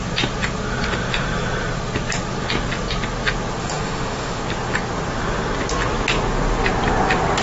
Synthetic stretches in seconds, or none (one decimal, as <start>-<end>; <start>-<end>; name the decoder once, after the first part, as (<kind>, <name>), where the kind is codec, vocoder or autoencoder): 3.6-4.4 (autoencoder, DAC-VAE)